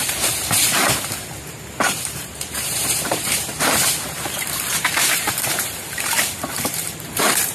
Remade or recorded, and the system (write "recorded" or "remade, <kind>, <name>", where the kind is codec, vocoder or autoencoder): remade, vocoder, BigVGAN v2